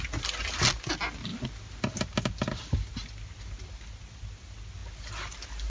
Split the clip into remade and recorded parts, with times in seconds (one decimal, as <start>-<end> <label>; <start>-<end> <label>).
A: 0.0-5.7 recorded